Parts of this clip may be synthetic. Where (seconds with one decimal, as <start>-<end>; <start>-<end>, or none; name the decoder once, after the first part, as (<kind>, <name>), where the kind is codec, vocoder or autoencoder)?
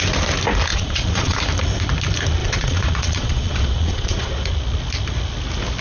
0.7-1.4 (vocoder, Vocos); 2.4-4.5